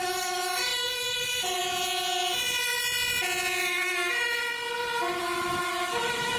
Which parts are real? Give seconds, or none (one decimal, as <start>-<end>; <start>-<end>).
1.6-3.6; 4.5-5.2